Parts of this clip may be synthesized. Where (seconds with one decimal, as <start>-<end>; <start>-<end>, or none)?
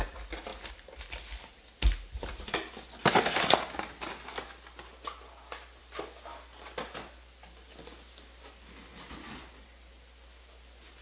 0.5-1.4; 3.0-3.5; 5.8-9.1